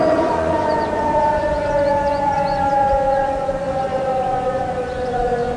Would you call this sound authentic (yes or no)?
no